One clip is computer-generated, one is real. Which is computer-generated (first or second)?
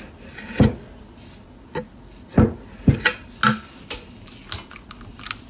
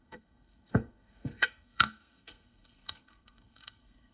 second